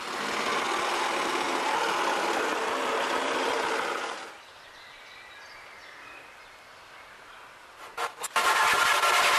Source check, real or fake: real